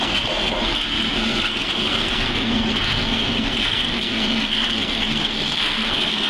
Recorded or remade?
remade